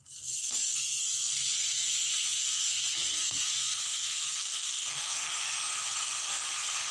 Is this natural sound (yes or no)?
no